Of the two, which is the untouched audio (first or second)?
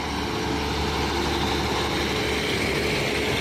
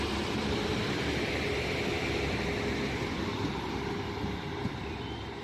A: first